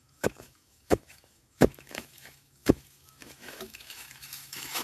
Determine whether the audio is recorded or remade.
remade